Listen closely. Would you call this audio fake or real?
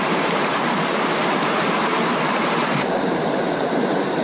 fake